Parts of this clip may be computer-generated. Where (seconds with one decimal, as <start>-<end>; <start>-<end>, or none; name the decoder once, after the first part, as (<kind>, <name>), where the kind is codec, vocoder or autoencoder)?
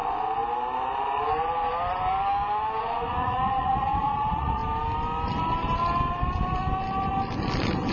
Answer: 2.8-4.6 (vocoder, Vocos)